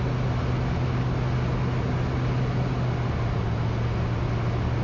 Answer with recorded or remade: recorded